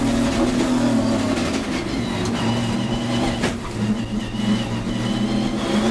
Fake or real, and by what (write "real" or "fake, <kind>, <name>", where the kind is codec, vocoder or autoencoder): real